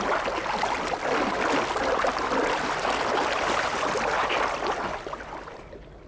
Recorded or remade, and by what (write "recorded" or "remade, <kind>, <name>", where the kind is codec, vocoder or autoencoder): recorded